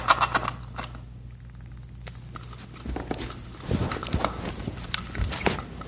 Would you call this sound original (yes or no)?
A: yes